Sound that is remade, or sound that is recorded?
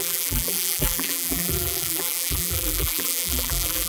remade